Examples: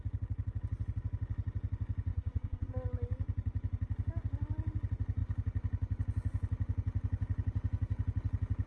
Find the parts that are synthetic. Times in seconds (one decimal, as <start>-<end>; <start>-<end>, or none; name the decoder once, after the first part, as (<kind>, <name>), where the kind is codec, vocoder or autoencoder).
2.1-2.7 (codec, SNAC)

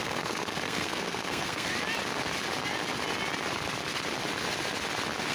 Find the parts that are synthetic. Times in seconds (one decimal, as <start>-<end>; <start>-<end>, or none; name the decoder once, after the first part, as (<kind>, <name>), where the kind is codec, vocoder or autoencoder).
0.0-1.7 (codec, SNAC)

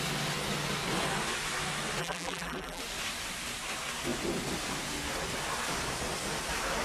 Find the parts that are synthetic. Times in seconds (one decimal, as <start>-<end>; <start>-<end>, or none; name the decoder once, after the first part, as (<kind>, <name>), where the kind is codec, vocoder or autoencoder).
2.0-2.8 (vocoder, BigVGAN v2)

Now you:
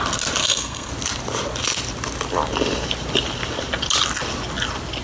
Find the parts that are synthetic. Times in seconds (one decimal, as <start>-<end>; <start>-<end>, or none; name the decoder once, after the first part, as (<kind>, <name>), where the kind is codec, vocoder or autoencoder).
0.4-0.9 (codec, SNAC)